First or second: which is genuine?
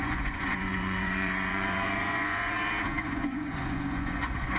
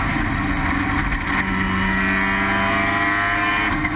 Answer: second